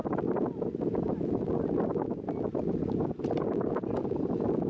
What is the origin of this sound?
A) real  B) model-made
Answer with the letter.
A